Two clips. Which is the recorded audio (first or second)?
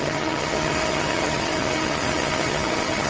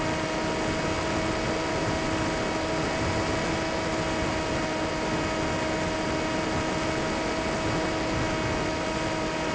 second